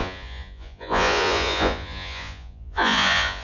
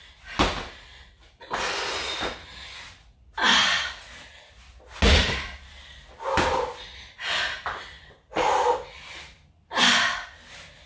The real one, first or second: second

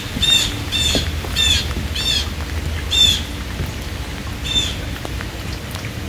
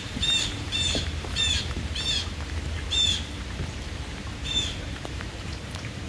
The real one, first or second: first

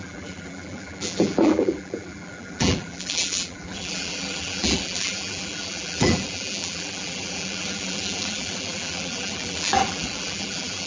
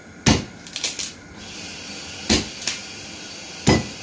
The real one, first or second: second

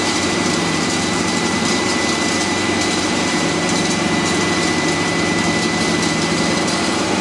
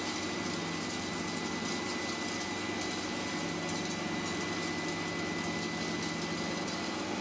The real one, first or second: second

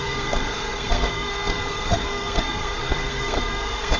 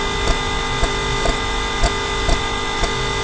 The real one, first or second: second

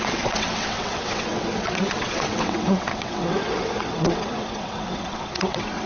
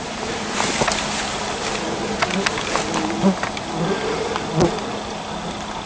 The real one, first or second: second